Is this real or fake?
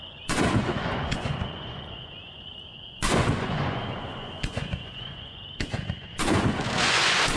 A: fake